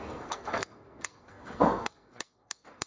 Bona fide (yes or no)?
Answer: no